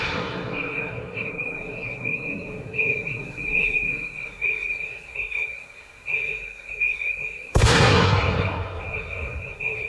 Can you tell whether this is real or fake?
fake